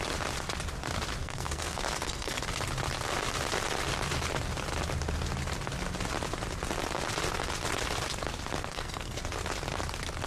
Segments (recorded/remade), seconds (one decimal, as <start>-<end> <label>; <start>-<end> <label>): 0.0-1.2 recorded; 1.2-2.4 remade; 2.4-8.7 recorded; 8.7-9.2 remade; 9.2-10.3 recorded